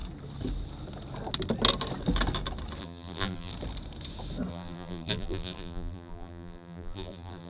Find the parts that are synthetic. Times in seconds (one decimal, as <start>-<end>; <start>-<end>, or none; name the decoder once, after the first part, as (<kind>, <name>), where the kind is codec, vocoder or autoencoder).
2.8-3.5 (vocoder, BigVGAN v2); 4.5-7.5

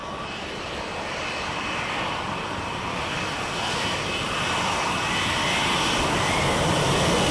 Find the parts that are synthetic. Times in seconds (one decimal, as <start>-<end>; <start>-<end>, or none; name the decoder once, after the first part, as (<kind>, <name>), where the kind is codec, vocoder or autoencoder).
none

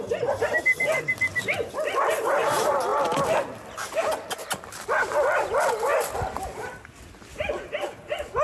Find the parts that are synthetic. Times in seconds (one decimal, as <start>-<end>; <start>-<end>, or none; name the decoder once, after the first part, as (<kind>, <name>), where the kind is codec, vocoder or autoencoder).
none

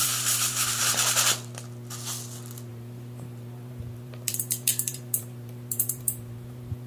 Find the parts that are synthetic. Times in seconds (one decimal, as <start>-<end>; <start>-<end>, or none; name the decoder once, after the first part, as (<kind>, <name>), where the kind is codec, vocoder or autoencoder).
0.0-0.8 (vocoder, BigVGAN v2); 2.7-6.9

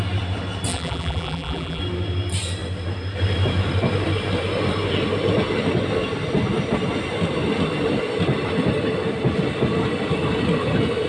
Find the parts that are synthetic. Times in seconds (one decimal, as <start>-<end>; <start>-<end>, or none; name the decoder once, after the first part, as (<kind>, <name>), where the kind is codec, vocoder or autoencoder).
0.7-1.8 (vocoder, BigVGAN v2)

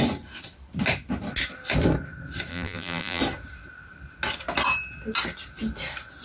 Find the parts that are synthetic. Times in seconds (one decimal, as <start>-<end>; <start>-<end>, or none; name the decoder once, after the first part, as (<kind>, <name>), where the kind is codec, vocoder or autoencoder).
2.5-3.2 (vocoder, BigVGAN v2)

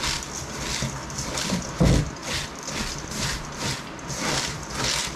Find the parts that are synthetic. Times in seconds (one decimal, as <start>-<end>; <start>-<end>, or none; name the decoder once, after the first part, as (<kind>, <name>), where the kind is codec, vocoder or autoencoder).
1.0-1.6 (vocoder, BigVGAN v2); 2.2-4.6